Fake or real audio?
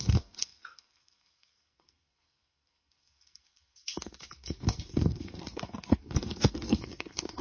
fake